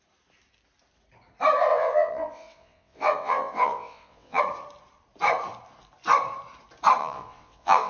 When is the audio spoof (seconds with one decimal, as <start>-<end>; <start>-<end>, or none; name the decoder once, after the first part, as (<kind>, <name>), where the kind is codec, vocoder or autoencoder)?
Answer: 1.7-4.4 (vocoder, WaveNeXt); 7.0-7.9